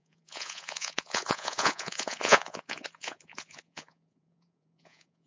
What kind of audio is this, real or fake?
fake